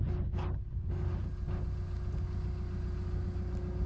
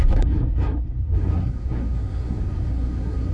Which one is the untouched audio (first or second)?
first